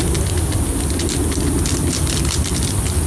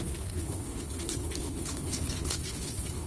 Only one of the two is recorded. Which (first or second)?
first